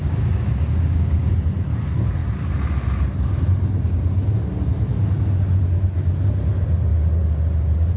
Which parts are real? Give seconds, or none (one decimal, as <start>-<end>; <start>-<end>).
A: 1.3-8.0